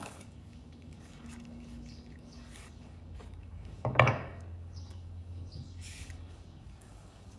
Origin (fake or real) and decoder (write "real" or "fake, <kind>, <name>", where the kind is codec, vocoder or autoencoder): fake, codec, DAC